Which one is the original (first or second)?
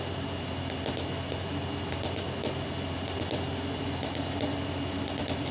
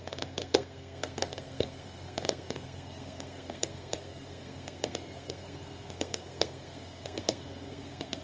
first